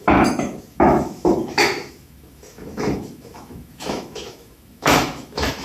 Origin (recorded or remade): remade